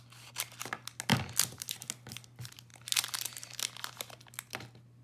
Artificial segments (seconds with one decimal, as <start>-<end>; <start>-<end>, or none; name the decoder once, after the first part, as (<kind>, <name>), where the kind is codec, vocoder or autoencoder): none